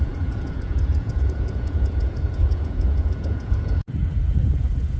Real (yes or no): no